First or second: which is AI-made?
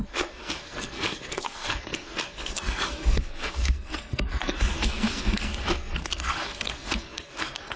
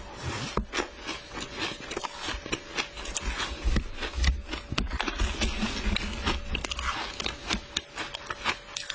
first